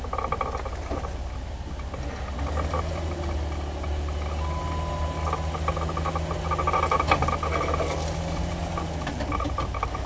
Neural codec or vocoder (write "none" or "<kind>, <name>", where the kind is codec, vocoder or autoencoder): none